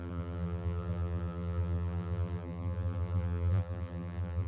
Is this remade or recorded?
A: remade